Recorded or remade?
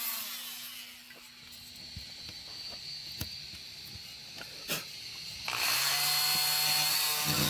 recorded